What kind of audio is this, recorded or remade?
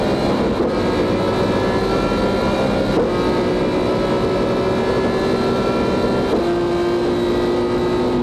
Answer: recorded